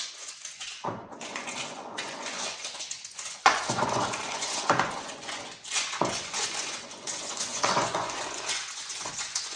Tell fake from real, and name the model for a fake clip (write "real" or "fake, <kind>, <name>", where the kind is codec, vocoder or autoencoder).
fake, vocoder, Vocos